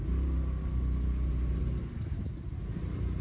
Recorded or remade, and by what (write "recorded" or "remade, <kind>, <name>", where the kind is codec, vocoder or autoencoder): recorded